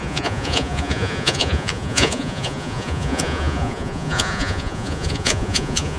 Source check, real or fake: fake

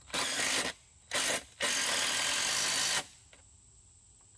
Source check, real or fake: real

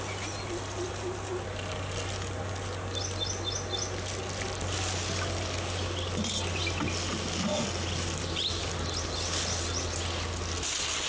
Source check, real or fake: real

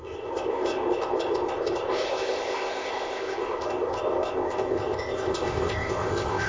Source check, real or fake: fake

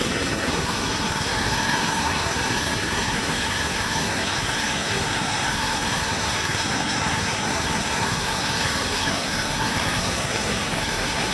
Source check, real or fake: fake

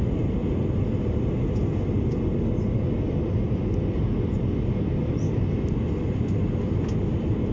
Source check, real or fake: real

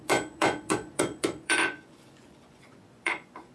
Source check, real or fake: fake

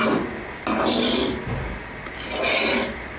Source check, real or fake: real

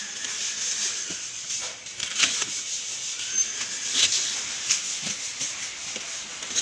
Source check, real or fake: real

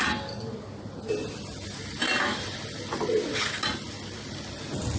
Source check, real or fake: real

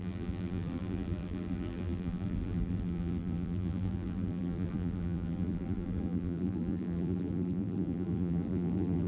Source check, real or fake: fake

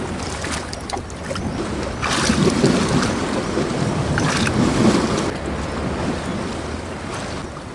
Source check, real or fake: real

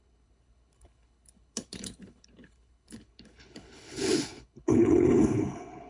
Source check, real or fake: fake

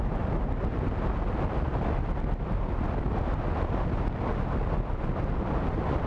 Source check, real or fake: real